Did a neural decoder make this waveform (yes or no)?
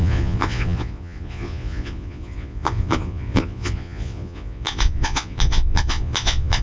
yes